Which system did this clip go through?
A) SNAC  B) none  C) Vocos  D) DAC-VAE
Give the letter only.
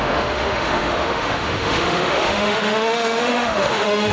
D